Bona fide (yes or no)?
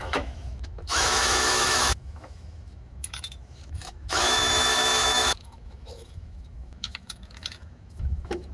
no